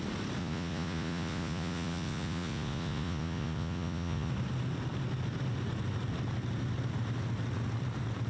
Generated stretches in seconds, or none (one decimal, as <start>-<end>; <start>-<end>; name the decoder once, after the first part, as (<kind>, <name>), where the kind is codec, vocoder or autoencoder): 0.4-4.3 (vocoder, Vocos)

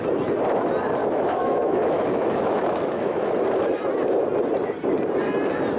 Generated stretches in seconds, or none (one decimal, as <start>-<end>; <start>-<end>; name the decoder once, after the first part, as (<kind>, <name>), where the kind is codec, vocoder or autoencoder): 1.0-3.3 (autoencoder, DAC-VAE)